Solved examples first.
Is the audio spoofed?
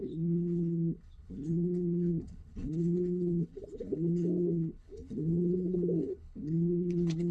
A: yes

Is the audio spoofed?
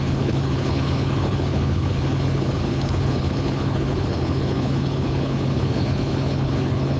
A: yes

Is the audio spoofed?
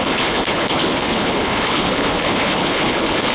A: yes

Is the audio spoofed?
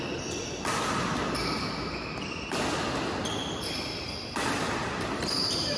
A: no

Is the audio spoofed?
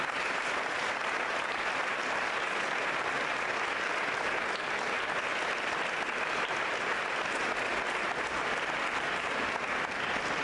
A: no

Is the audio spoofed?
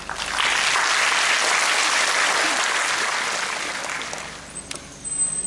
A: no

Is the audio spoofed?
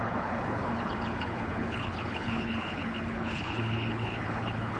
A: yes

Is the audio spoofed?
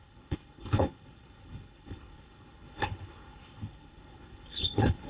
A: yes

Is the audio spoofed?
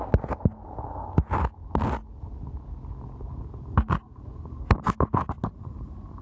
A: no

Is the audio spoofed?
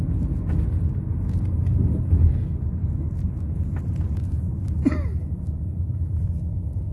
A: no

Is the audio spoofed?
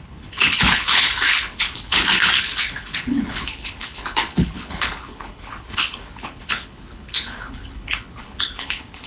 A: yes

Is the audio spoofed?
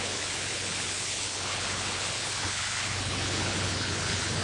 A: yes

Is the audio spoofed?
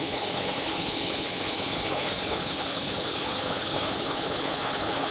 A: yes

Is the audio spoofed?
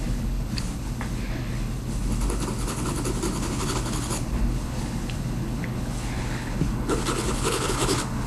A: yes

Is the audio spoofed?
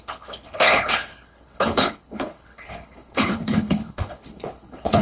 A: yes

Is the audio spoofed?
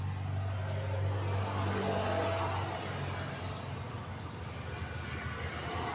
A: no